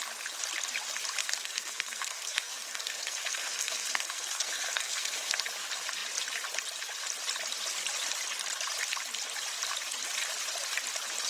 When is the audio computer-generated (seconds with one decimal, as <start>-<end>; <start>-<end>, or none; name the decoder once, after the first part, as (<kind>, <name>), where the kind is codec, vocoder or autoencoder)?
1.2-5.4 (codec, SNAC)